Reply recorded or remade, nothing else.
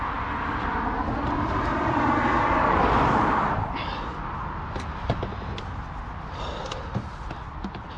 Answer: recorded